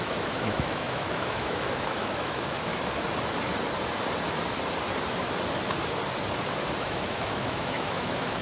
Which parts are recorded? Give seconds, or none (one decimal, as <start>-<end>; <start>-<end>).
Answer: 2.7-6.8